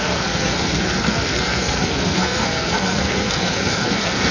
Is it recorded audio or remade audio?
remade